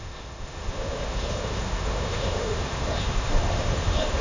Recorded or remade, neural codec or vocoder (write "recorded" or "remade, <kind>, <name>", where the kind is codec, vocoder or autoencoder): remade, autoencoder, DAC-VAE